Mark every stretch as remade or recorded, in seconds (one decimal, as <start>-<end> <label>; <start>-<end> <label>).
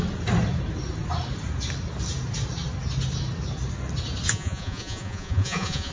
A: 0.0-4.3 recorded; 4.3-5.9 remade